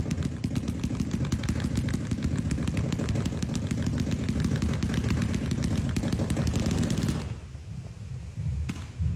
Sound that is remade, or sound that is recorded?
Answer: recorded